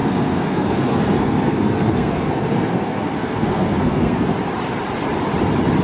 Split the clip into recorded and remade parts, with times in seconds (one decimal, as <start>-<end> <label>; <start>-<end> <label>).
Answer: 0.0-4.3 remade; 4.3-5.8 recorded